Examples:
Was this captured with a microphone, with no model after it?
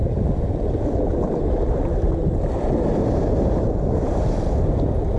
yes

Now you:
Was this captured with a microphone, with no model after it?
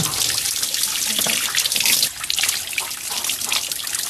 no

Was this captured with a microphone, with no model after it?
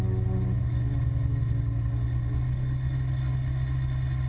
yes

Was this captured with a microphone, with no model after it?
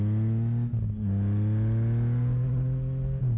yes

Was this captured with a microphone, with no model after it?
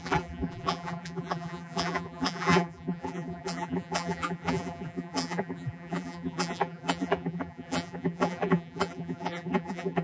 no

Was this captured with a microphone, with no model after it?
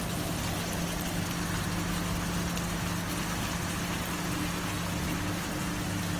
yes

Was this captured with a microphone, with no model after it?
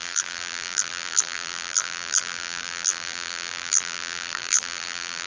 no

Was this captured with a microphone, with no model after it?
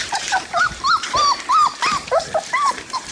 no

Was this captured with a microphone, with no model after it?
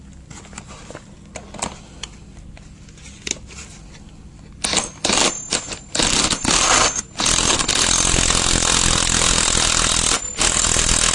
yes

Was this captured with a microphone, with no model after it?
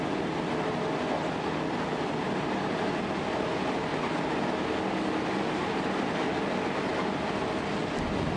yes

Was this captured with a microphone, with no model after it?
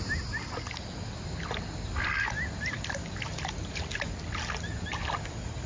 yes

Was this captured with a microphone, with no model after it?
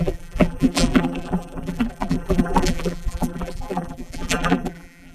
no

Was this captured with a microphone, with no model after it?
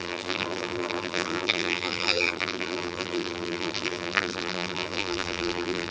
no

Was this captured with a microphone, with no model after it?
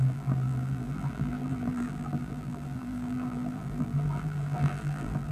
no